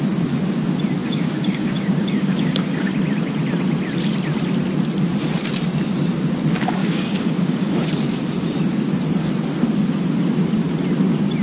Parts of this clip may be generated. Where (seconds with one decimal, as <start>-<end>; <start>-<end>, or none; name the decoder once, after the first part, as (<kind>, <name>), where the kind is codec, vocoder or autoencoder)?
1.0-2.9 (codec, DAC); 6.8-7.7

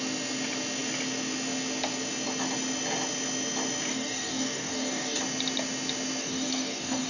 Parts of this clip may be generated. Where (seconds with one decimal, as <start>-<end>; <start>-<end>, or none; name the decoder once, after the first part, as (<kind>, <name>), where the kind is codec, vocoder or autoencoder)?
3.9-5.2 (codec, DAC); 6.2-7.1

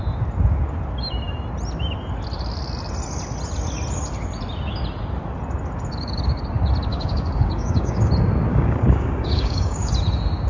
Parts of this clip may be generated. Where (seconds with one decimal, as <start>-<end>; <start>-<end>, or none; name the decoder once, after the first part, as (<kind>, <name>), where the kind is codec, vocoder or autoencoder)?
6.9-8.1 (codec, DAC); 8.5-9.9

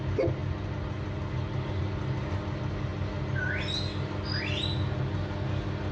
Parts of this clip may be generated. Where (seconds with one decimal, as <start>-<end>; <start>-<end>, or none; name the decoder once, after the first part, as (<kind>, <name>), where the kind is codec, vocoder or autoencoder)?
none

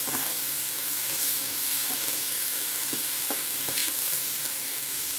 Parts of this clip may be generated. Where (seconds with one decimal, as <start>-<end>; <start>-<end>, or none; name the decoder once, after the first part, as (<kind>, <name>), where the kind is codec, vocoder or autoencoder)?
0.0-5.2 (codec, DAC)